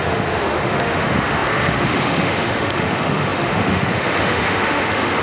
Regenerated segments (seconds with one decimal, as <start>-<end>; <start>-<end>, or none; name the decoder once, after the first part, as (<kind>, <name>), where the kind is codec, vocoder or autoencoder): 0.0-5.2 (autoencoder, DAC-VAE)